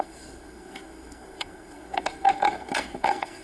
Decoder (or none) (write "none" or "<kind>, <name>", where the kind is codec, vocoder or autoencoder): codec, SNAC